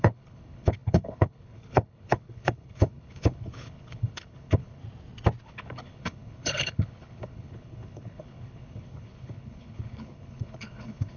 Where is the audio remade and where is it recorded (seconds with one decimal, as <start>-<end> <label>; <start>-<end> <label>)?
0.0-4.8 remade; 4.8-5.4 recorded; 5.4-11.2 remade